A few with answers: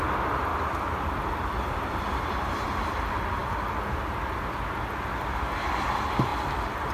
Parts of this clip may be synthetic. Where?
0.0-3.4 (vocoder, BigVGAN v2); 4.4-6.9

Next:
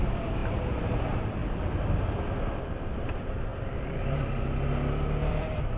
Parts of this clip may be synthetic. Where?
0.0-1.4 (vocoder, BigVGAN v2); 2.7-3.5; 5.3-5.8

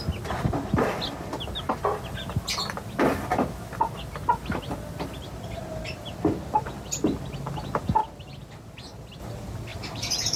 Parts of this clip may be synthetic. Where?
9.7-10.4 (vocoder, BigVGAN v2)

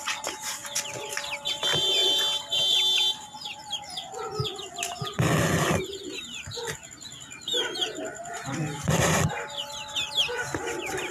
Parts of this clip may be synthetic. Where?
0.0-2.0 (vocoder, BigVGAN v2); 6.9-7.5; 8.2-11.1